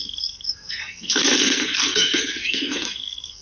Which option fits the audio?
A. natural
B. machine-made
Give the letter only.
B